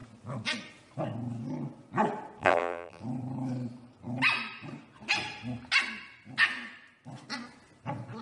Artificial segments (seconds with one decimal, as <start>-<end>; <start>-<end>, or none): 2.4-3.0